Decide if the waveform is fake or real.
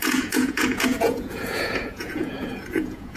fake